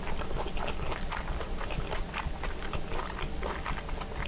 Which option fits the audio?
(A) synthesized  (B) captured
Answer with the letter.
B